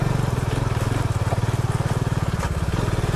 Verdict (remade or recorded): recorded